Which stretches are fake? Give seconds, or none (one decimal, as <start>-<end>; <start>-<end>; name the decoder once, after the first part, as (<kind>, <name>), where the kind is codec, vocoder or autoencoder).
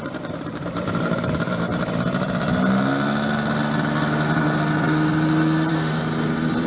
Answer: 0.0-1.7 (vocoder, BigVGAN v2); 5.7-6.7